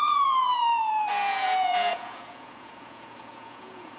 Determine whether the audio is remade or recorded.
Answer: remade